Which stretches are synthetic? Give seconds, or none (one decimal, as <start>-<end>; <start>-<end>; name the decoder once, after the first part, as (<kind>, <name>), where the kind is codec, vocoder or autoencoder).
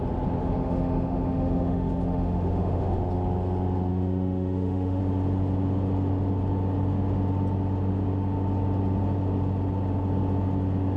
0.4-3.0 (autoencoder, DAC-VAE); 3.9-5.0